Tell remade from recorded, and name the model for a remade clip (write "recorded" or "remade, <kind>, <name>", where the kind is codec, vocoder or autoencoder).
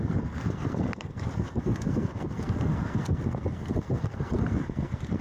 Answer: remade, codec, SNAC